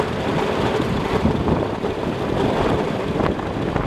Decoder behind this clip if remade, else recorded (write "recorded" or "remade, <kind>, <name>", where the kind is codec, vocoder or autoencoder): recorded